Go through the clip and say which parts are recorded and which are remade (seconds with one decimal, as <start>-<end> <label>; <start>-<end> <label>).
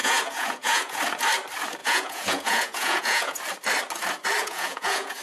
0.0-1.0 remade; 1.0-1.8 recorded; 1.8-3.4 remade; 3.4-4.4 recorded; 4.4-5.2 remade